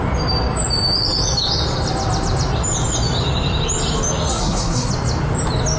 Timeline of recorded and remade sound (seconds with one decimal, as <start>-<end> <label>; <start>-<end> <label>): 0.0-4.3 recorded; 4.3-4.9 remade; 4.9-5.8 recorded